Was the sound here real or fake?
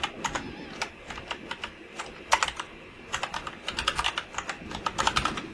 real